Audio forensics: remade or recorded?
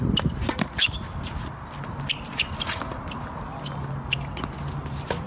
recorded